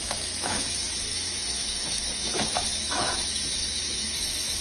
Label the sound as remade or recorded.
remade